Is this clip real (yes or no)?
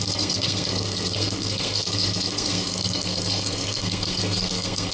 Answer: no